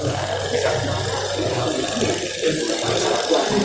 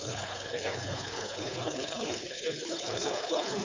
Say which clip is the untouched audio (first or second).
first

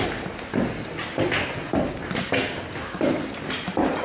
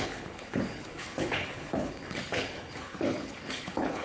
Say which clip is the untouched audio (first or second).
first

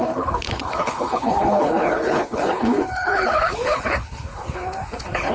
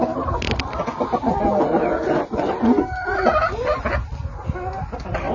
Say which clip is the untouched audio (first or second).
second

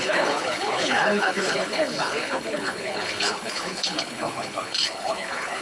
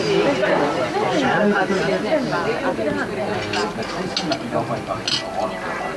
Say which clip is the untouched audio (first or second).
second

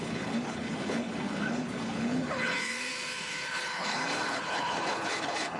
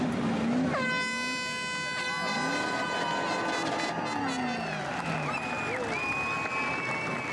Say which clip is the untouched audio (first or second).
second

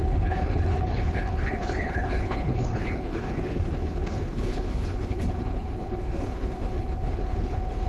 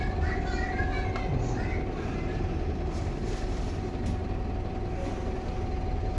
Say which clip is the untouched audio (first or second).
second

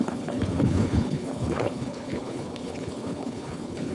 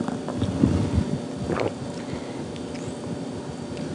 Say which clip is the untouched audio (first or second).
second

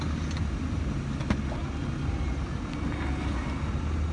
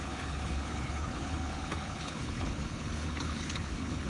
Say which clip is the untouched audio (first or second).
first